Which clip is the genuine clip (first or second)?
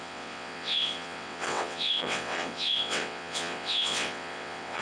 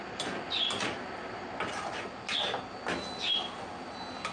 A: second